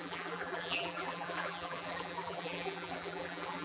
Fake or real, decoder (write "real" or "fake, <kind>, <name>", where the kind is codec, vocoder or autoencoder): fake, vocoder, BigVGAN v2